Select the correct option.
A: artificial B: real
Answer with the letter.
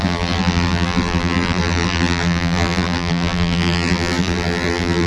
A